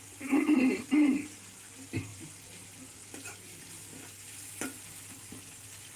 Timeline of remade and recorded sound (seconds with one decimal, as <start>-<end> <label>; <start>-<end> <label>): 0.0-2.1 recorded; 2.1-6.0 remade